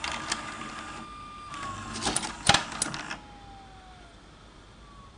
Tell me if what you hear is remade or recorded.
recorded